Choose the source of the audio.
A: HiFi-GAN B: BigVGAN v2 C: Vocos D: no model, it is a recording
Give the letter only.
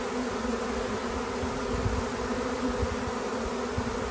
D